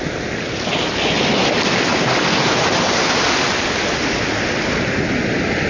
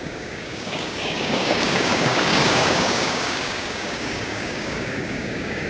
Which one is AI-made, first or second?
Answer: second